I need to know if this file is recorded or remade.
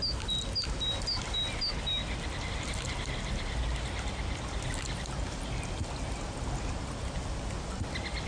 recorded